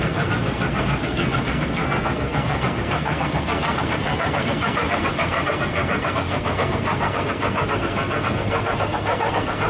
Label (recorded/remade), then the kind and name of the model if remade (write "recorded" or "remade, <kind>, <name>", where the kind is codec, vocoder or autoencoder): remade, codec, SNAC